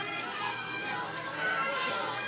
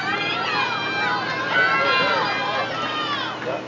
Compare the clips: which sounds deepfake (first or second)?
first